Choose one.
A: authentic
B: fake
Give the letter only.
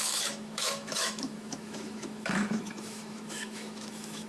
B